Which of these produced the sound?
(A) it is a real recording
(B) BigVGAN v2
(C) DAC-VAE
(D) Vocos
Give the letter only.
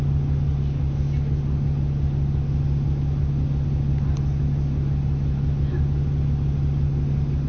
A